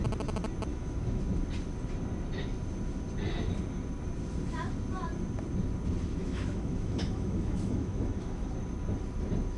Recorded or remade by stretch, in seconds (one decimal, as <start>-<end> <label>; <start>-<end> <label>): 0.0-0.7 recorded; 0.7-1.2 remade; 1.2-6.2 recorded; 6.2-8.5 remade; 8.5-9.6 recorded